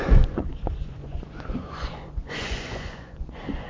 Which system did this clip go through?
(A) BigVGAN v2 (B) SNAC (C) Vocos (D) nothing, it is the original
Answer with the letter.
C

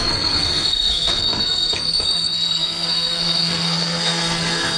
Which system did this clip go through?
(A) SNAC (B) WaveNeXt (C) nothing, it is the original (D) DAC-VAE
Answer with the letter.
A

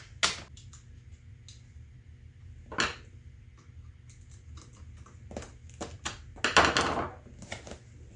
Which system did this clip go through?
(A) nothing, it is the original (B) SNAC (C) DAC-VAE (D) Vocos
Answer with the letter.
A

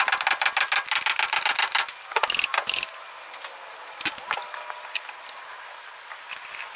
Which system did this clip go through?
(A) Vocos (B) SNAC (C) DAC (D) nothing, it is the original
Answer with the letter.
D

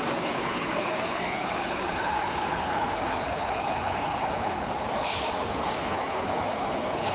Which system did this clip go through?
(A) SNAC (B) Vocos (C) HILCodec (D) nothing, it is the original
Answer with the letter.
C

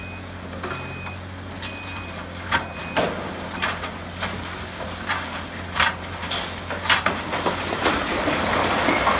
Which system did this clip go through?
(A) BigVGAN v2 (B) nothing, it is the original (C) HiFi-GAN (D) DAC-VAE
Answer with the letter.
B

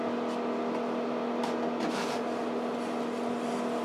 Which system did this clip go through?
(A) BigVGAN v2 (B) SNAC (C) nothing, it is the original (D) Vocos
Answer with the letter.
C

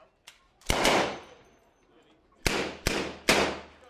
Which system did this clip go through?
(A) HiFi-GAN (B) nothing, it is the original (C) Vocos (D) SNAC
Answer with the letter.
B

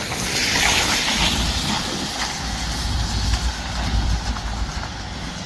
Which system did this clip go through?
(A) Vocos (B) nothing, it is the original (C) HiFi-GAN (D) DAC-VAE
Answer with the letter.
B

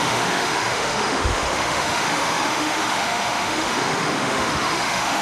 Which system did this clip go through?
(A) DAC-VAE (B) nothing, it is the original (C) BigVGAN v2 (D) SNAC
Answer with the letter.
A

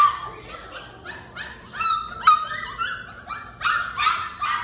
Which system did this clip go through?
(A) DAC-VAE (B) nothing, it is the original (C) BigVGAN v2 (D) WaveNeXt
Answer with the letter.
B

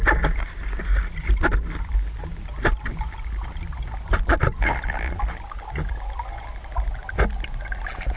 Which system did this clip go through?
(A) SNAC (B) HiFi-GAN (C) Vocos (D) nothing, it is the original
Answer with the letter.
D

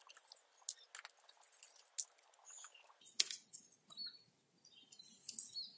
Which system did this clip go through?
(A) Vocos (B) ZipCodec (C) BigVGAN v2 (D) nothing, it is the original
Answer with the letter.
D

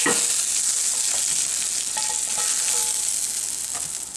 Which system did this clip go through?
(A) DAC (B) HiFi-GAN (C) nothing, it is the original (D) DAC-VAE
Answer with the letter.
C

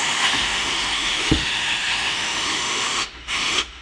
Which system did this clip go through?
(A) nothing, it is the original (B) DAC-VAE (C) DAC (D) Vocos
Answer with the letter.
B